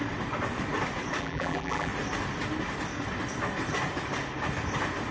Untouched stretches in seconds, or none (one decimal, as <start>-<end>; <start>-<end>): 0.0-1.2; 1.9-5.1

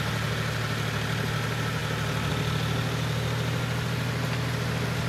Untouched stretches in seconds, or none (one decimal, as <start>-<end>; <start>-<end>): 0.0-5.1

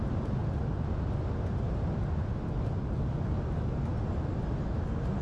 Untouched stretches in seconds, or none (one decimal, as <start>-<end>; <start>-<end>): 0.0-0.4; 3.4-5.2

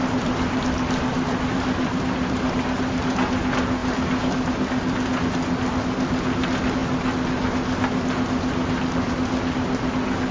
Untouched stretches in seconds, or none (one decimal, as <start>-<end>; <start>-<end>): 2.5-3.8; 4.5-10.3

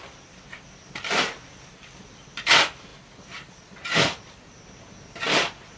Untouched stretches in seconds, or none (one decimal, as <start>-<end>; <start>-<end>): 2.5-5.8

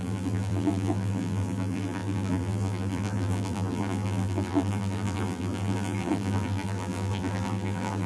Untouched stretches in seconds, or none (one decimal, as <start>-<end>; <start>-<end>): none

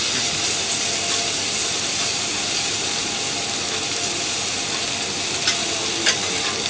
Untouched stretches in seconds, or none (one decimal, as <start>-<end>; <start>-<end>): 0.0-1.6; 3.1-6.7